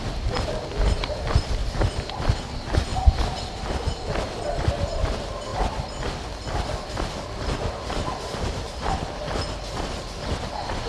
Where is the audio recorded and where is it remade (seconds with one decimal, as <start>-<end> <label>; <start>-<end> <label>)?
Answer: 0.0-2.9 remade; 2.9-4.7 recorded; 4.7-5.5 remade; 5.5-10.4 recorded; 10.4-10.9 remade